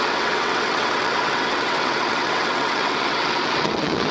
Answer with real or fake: fake